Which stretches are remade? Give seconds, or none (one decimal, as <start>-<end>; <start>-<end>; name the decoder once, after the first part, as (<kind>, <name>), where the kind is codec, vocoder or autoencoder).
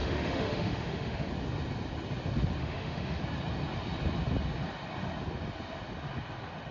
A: 0.0-1.3 (autoencoder, DAC-VAE); 2.6-3.2